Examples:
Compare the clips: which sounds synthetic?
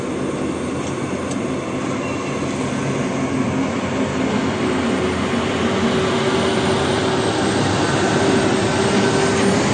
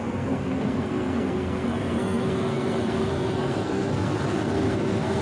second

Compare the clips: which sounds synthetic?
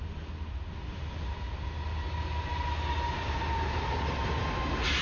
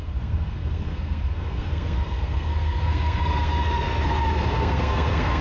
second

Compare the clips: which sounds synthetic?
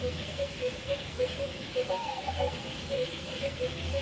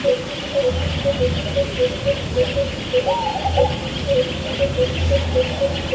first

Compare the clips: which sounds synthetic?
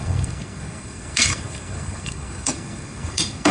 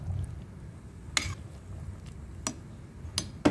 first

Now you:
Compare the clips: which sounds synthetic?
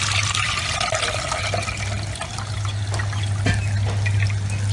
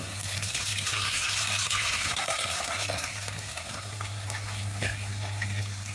second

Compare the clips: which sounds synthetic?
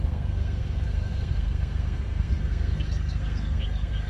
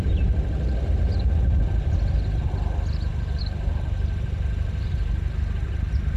first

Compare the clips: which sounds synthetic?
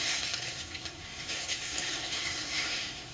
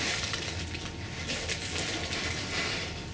first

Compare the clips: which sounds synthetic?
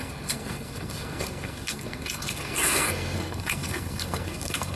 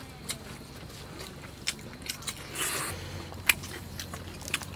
first